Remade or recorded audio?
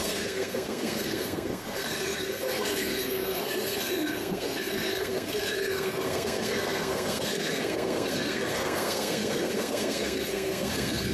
remade